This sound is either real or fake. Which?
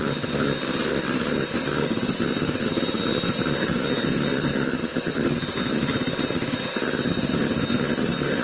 real